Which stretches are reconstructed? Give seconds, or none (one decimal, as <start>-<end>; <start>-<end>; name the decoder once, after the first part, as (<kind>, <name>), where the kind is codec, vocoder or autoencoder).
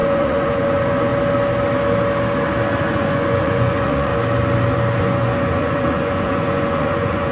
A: 0.0-1.1 (vocoder, Vocos); 2.9-4.1; 5.0-7.3